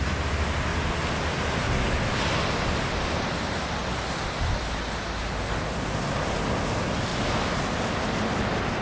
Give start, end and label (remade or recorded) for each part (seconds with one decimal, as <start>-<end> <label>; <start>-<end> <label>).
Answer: 0.0-8.8 recorded